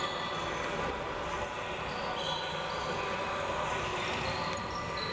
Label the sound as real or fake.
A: real